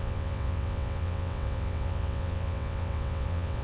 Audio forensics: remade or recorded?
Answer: remade